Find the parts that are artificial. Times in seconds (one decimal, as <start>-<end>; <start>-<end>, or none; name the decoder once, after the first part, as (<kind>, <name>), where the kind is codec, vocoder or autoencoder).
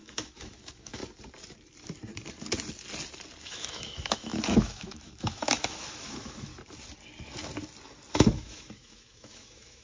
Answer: 0.0-1.0 (autoencoder, DAC-VAE); 3.4-6.5; 8.1-9.8